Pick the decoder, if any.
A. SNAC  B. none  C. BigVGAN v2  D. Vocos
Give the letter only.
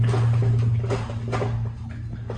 B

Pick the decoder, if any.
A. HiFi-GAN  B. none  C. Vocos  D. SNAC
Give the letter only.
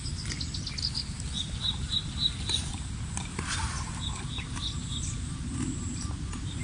B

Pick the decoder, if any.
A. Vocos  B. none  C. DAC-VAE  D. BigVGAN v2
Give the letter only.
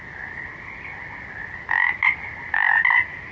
B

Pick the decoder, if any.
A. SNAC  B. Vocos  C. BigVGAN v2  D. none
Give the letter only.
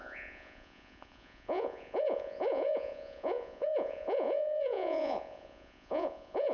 B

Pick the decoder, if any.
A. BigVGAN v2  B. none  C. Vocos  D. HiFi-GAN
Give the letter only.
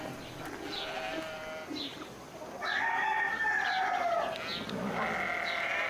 B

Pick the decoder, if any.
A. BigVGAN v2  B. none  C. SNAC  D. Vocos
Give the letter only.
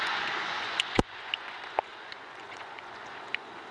D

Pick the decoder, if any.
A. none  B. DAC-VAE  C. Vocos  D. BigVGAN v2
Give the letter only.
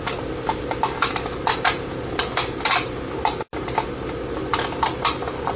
A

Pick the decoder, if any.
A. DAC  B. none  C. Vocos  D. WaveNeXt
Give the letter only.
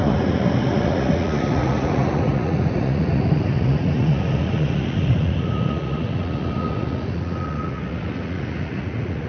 C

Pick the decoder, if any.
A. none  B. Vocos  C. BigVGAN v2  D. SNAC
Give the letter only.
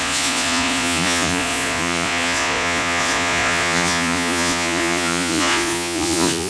B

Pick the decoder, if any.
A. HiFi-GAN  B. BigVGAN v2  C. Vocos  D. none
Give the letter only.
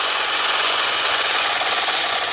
C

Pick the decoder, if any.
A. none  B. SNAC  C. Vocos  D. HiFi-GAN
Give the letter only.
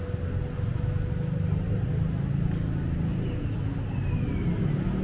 A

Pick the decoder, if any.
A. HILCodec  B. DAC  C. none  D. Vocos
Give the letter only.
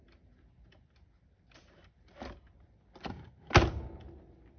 C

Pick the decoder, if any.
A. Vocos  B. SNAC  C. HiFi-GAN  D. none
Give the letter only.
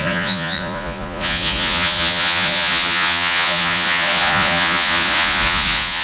A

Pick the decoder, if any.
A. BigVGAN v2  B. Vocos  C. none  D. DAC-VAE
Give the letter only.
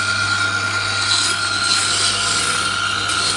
C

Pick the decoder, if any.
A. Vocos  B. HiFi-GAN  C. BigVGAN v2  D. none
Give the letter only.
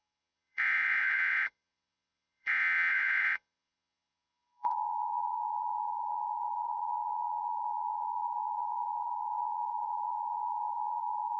A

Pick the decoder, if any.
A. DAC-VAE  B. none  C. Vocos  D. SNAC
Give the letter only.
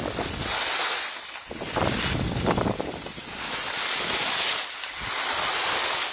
B